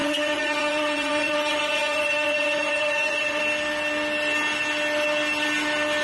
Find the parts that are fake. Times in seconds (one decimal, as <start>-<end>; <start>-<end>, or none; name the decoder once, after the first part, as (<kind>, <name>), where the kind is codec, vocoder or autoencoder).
0.0-3.4 (vocoder, Vocos)